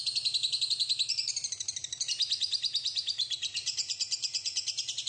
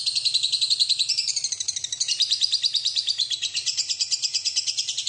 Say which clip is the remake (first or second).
second